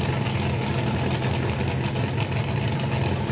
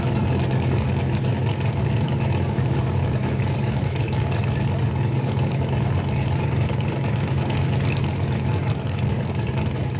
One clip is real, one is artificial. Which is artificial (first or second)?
second